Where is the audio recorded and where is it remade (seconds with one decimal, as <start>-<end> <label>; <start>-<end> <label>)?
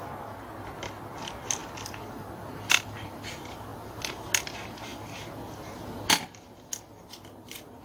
0.0-1.6 recorded; 1.6-3.3 remade; 3.3-7.8 recorded